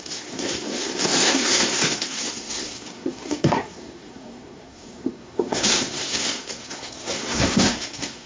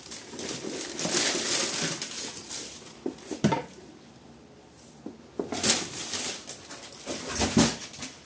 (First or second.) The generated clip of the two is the first